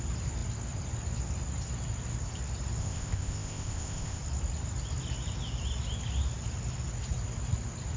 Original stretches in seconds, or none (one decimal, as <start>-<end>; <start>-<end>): 0.0-2.8; 4.2-8.0